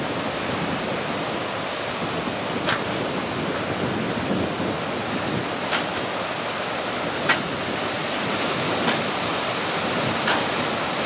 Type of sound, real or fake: real